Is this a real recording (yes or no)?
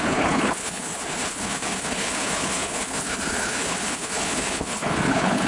no